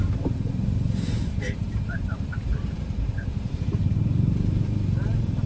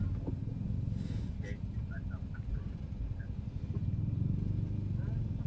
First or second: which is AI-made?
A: first